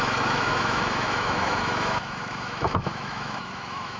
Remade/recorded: remade